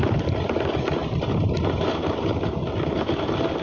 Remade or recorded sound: recorded